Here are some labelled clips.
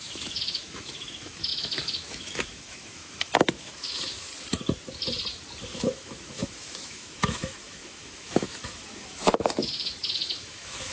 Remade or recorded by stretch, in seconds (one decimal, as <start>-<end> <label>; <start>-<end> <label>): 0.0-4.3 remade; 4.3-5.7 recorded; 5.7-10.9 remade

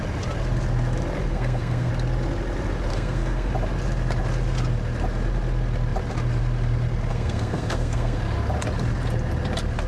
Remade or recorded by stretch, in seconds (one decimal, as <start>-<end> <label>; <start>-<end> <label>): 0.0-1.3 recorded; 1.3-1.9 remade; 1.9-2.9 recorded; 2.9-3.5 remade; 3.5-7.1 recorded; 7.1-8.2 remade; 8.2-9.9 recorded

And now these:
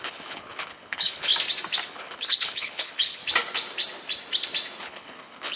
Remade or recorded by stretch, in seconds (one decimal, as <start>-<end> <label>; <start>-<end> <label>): 0.0-1.3 remade; 1.3-1.9 recorded; 1.9-3.2 remade; 3.2-4.8 recorded; 4.8-5.6 remade